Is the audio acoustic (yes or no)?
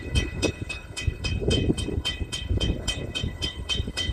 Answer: no